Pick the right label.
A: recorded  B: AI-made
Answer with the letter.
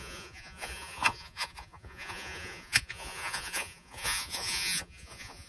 B